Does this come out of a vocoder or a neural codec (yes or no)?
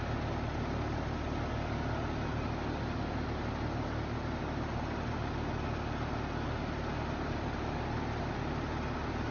no